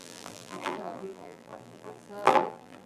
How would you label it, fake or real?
fake